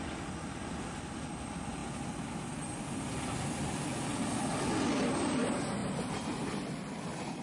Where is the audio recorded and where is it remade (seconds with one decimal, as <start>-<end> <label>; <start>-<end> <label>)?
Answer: 0.0-7.4 recorded